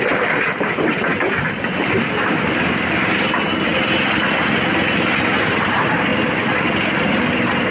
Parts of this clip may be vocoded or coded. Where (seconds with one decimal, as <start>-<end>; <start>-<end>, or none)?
0.0-1.1; 1.8-3.7; 5.4-6.1; 7.3-7.7